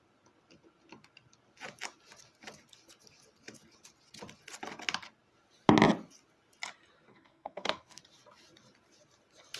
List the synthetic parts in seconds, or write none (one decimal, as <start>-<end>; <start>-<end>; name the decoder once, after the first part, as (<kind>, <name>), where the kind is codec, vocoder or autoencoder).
7.1-8.0 (codec, SNAC)